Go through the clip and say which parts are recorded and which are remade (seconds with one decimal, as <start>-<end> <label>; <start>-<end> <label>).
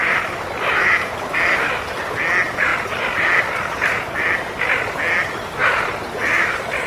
0.0-2.7 recorded; 2.7-4.3 remade; 4.3-5.6 recorded; 5.6-6.9 remade